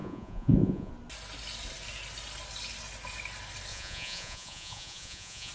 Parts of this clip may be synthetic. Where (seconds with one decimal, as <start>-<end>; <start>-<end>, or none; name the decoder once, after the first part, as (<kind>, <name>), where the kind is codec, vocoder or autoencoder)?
0.0-0.9 (vocoder, Vocos); 3.7-5.5

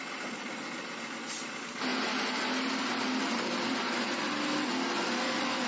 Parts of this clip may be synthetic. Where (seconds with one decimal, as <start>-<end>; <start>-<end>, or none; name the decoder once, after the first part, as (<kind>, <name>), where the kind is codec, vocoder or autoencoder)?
none